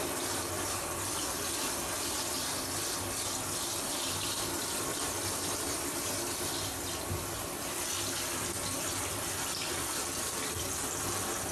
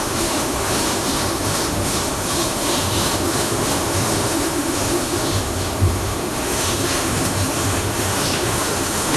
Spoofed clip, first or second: second